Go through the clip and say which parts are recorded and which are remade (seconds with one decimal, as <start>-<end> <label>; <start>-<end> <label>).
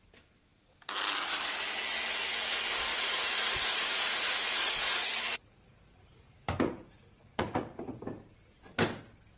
0.0-2.9 recorded; 2.9-8.0 remade; 8.0-9.4 recorded